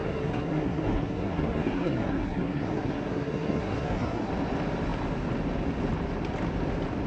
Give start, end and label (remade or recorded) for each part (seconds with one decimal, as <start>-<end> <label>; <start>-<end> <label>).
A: 0.0-4.3 remade; 4.3-7.1 recorded